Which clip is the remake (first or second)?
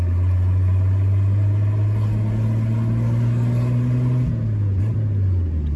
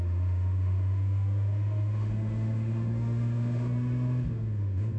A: second